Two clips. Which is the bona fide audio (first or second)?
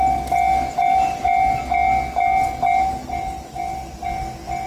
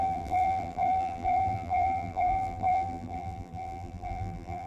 first